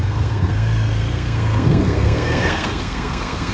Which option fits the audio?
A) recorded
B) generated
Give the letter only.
B